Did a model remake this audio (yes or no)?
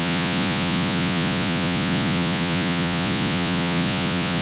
yes